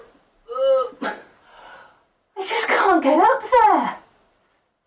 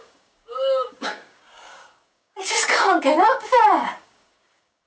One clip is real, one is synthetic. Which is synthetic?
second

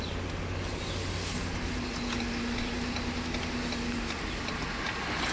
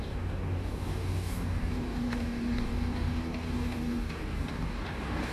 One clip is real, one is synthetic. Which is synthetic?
second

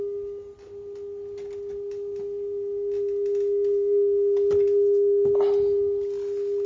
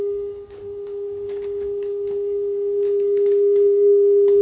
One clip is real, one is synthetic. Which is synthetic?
second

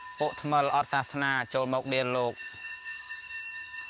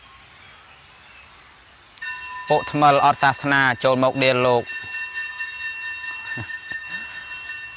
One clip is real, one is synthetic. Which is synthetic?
first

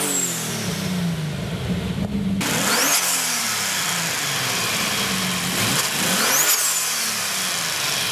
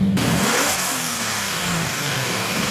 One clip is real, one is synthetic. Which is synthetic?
second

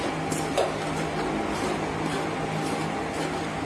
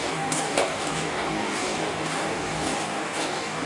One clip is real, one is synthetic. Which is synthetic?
second